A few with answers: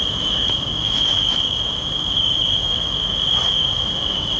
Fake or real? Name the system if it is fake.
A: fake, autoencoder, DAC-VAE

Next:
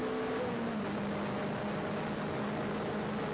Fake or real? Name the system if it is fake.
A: real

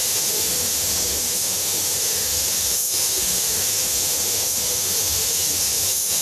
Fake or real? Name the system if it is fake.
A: fake, autoencoder, DAC-VAE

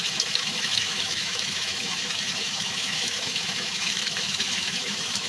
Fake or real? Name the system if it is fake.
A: fake, autoencoder, DAC-VAE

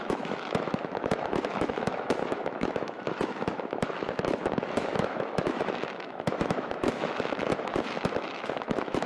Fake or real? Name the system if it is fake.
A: fake, autoencoder, DAC-VAE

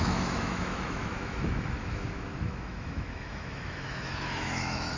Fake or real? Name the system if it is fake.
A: fake, autoencoder, DAC-VAE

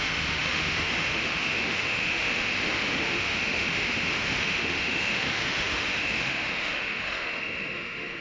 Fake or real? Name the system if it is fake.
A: fake, autoencoder, DAC-VAE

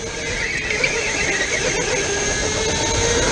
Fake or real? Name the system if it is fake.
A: real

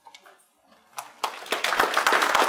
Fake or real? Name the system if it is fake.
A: real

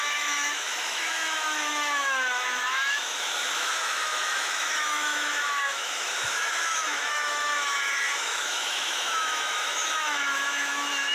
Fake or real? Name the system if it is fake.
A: fake, autoencoder, DAC-VAE